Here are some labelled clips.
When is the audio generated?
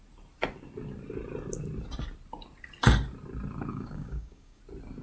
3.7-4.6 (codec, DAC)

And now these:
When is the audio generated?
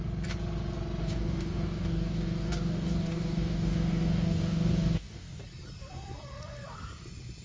1.0-5.4 (codec, DAC)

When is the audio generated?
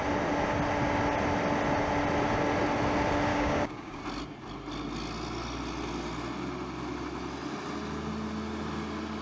3.3-4.0 (codec, DAC)